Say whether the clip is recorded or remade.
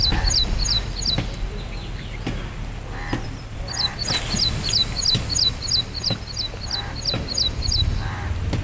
recorded